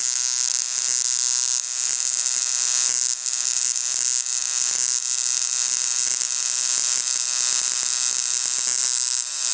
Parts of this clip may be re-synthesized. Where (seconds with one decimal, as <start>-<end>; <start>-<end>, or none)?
8.8-9.5